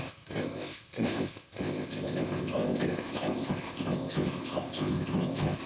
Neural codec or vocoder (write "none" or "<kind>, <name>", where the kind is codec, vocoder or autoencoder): codec, ZipCodec